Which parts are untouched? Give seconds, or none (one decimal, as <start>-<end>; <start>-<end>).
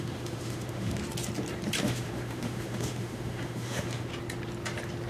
1.0-1.8; 4.1-5.1